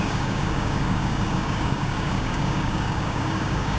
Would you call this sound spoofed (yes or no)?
yes